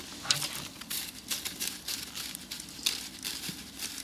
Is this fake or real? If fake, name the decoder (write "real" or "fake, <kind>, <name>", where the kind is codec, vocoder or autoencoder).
real